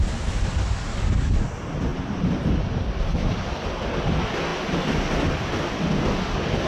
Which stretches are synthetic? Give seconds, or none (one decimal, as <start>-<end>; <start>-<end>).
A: 0.9-1.5